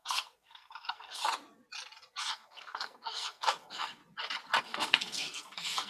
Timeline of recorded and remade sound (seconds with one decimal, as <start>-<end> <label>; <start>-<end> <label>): 0.0-1.2 remade; 1.2-2.2 recorded; 2.2-4.0 remade; 4.0-4.6 recorded; 4.6-5.9 remade